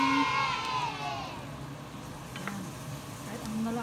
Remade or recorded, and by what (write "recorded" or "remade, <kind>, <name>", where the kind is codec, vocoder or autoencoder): recorded